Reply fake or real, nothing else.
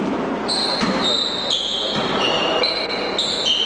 real